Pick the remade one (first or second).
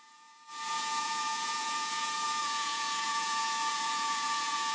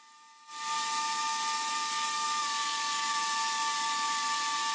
first